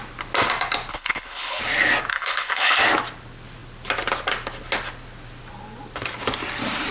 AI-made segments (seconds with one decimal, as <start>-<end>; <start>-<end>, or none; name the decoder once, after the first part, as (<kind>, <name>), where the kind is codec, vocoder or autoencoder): 0.9-1.6 (codec, HILCodec); 2.1-2.8